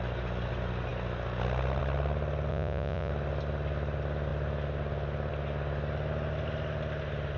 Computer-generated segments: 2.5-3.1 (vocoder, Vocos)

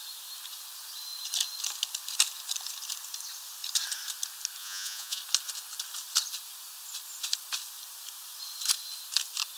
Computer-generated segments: 4.6-5.2 (vocoder, Vocos)

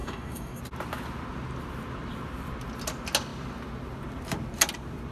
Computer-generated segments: 0.0-0.6 (codec, DAC)

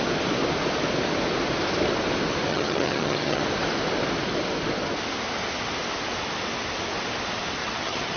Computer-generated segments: 2.5-3.4 (vocoder, HiFi-GAN); 7.6-8.2

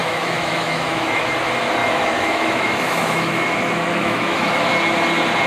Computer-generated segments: 0.0-1.2 (autoencoder, DAC-VAE); 1.8-4.7